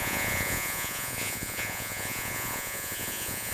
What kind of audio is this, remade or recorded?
remade